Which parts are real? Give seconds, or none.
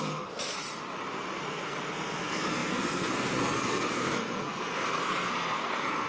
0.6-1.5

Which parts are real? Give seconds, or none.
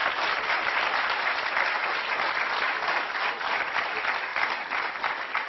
0.0-5.5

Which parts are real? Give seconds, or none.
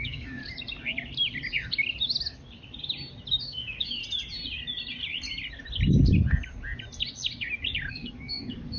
0.4-3.4; 4.0-7.9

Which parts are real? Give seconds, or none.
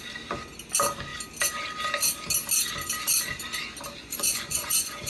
0.0-4.0